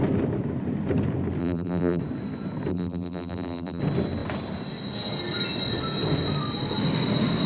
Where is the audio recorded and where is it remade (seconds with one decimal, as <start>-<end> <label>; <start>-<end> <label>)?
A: 0.0-1.4 recorded; 1.4-2.0 remade; 2.0-2.7 recorded; 2.7-3.8 remade; 3.8-7.5 recorded